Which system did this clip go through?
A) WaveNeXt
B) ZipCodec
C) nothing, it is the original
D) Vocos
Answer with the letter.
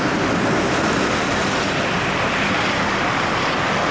C